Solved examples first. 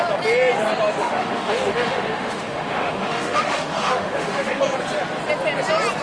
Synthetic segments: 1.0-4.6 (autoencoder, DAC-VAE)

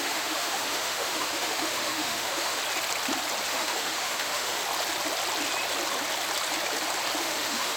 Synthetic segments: 0.0-2.6 (autoencoder, DAC-VAE); 3.5-4.6; 7.2-7.8

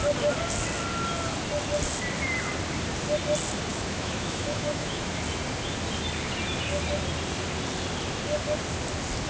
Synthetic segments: 3.7-5.1 (autoencoder, DAC-VAE)